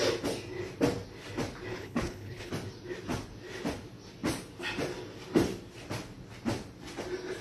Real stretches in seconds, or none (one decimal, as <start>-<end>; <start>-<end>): 0.0-1.7; 2.5-7.4